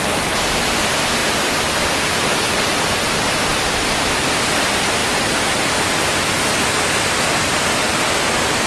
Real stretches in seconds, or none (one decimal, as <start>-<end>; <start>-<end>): 0.0-1.2; 1.7-8.7